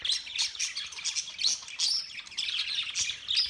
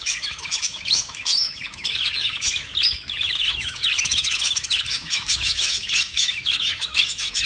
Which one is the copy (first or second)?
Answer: second